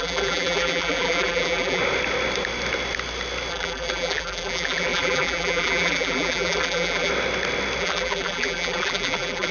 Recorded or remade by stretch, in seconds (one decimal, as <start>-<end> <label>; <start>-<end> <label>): 0.0-1.8 remade; 1.8-3.5 recorded; 3.5-7.1 remade; 7.1-7.8 recorded; 7.8-9.5 remade